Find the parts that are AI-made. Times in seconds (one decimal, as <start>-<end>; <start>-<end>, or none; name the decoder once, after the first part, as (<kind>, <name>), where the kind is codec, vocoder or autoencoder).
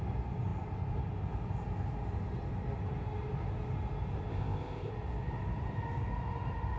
4.3-4.9 (codec, ZipCodec)